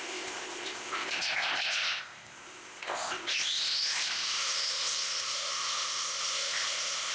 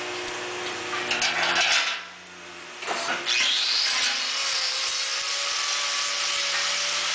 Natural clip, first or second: second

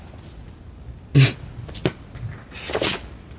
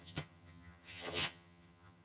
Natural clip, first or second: first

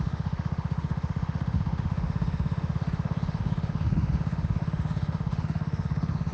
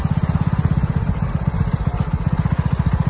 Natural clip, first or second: second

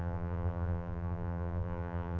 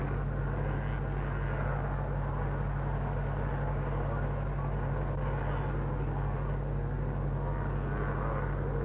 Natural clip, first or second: second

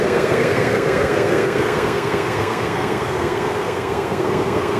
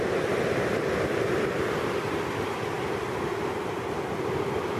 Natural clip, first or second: second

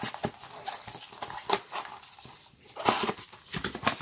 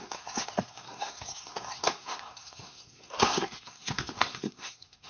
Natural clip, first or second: first